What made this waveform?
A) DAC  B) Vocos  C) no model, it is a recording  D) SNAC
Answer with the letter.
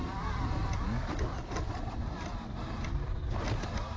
C